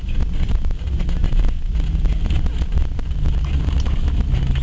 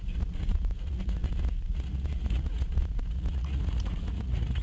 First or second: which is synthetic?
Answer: second